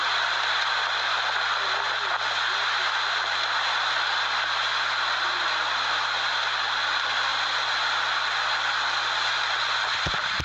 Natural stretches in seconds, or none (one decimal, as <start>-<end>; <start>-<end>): 0.0-10.4